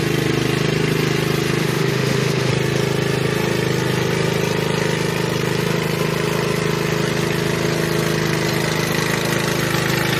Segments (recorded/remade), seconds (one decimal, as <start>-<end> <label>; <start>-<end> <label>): 0.0-1.6 recorded; 1.6-2.5 remade; 2.5-10.2 recorded